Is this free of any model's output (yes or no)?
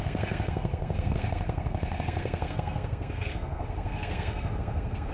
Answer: no